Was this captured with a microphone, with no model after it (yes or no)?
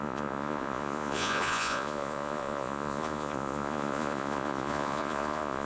no